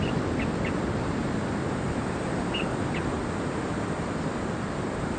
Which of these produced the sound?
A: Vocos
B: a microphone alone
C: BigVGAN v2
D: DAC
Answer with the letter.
C